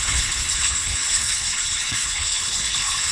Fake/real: fake